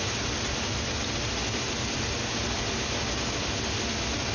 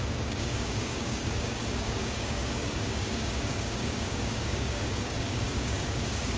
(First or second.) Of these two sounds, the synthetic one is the second